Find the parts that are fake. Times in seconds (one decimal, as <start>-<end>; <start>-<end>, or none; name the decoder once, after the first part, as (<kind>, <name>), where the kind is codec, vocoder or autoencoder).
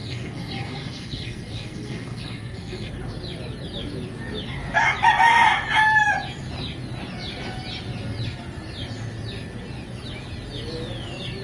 0.0-2.9 (codec, SNAC)